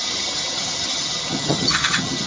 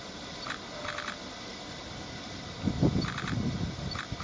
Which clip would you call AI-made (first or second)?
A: first